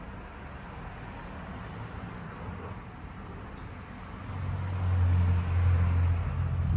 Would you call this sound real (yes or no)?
yes